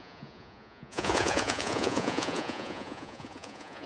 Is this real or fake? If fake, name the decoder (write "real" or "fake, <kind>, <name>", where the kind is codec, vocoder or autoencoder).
fake, vocoder, Vocos